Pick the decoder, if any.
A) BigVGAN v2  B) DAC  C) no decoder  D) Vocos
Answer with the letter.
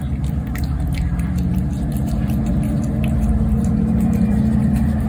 A